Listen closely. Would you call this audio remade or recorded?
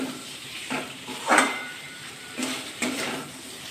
remade